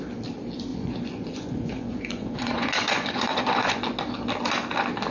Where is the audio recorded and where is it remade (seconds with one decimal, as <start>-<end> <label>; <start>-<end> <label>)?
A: 0.0-0.7 recorded; 0.7-3.8 remade; 3.8-5.1 recorded